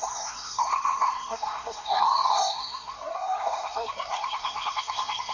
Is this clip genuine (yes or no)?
no